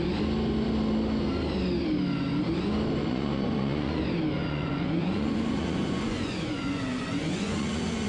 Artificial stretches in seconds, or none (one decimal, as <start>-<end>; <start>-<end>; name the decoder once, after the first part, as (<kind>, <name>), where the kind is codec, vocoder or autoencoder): 3.0-4.0 (vocoder, Vocos); 4.4-8.1